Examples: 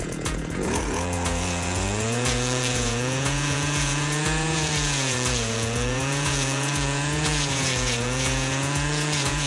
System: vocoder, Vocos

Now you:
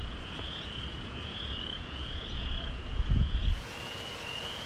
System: vocoder, Vocos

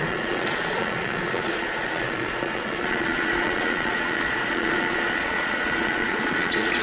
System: vocoder, Vocos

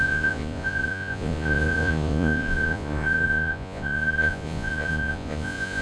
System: vocoder, Vocos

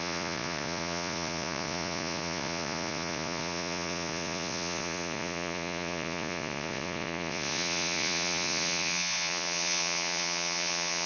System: vocoder, Vocos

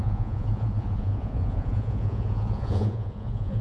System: vocoder, Vocos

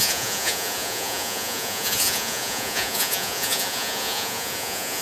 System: vocoder, Vocos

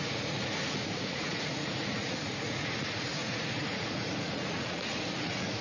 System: vocoder, Vocos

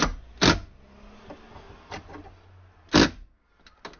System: none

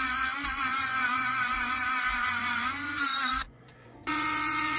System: vocoder, Vocos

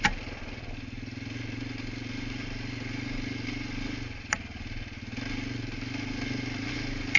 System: none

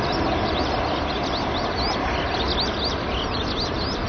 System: none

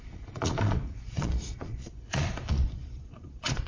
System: vocoder, Vocos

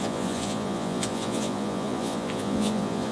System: vocoder, Vocos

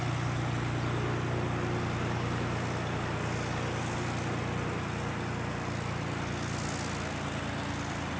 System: none